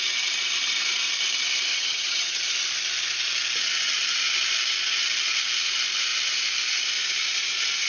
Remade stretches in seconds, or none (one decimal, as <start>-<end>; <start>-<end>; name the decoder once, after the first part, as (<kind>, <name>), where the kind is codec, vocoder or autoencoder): 1.7-2.4 (vocoder, HiFi-GAN)